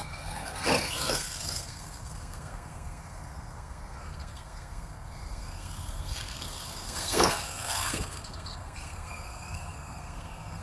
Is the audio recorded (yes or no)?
no